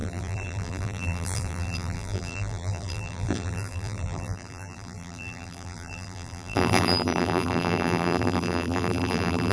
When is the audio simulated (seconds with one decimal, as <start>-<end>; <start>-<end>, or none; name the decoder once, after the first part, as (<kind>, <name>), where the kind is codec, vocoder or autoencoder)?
0.0-9.5 (vocoder, BigVGAN v2)